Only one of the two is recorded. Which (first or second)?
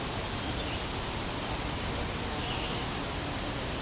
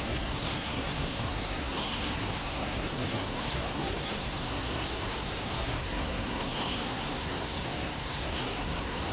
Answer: first